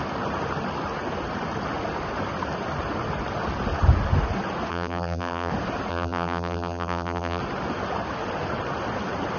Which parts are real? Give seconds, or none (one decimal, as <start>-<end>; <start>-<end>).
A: 0.0-4.7; 5.5-5.9; 7.4-9.4